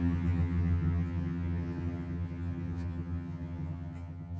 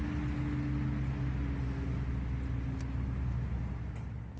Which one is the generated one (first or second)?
first